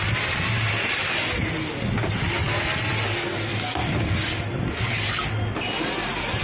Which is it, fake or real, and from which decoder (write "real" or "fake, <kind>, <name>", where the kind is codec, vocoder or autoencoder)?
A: real